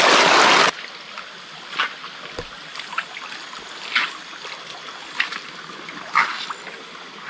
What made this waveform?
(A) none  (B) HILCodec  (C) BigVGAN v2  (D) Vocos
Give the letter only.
A